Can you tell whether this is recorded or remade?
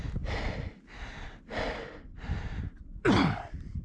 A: recorded